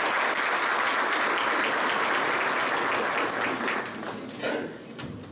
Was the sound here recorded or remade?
recorded